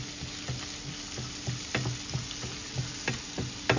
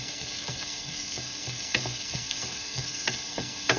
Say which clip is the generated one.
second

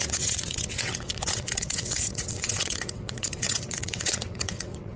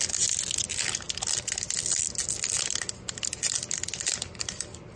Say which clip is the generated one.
first